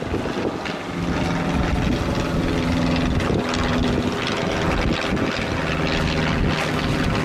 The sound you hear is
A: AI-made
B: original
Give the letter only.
B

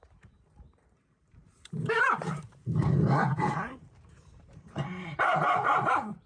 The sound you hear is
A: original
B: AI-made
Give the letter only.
B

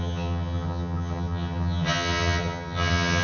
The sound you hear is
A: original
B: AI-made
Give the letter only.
B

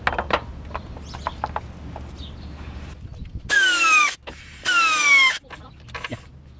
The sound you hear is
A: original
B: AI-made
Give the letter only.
A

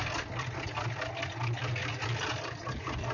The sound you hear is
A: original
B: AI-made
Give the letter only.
A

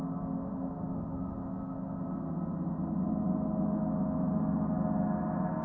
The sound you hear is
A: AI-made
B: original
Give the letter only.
B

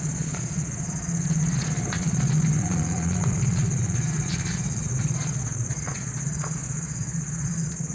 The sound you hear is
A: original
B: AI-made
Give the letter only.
B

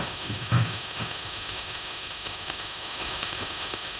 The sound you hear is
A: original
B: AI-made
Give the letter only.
B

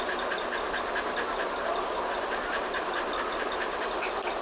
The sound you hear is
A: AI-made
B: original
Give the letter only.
B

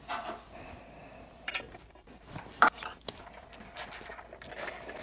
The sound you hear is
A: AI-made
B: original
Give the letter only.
A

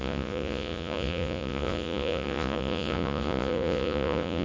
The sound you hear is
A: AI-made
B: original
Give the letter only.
A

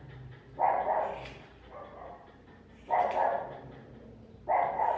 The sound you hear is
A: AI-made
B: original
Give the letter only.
B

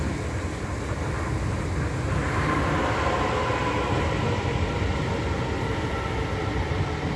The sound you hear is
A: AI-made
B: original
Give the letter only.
B